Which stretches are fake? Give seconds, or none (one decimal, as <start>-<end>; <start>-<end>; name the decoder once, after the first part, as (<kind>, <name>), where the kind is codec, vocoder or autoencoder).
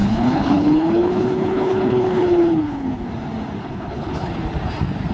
0.0-3.1 (codec, HILCodec); 3.6-4.3